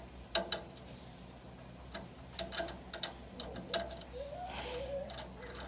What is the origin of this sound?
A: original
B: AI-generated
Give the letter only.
A